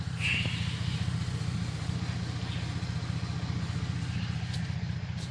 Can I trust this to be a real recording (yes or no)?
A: yes